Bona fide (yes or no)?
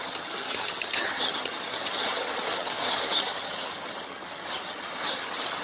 no